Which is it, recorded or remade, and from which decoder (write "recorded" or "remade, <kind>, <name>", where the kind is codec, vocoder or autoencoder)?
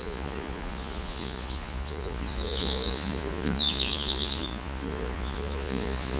remade, vocoder, Vocos